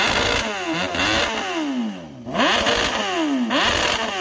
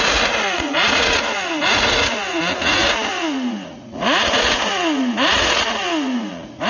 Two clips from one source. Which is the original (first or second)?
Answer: first